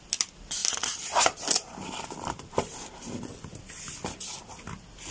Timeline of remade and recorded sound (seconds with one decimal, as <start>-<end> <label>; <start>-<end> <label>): 0.0-5.1 recorded